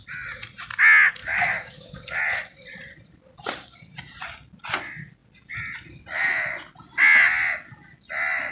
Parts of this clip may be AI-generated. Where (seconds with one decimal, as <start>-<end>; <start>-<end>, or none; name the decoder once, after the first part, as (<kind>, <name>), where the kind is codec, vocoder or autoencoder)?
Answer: 1.2-2.2 (codec, DAC)